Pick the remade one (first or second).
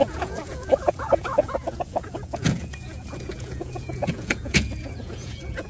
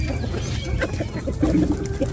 first